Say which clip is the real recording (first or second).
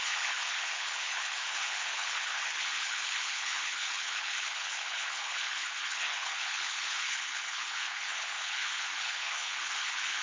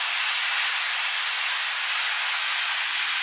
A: second